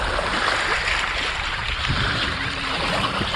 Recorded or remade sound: recorded